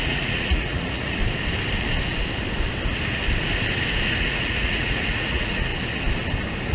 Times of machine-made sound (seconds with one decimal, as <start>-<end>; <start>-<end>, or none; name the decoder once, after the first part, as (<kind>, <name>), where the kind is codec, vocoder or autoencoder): 0.0-1.2 (vocoder, Vocos); 4.2-5.7